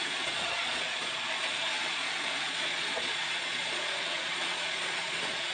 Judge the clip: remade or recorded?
remade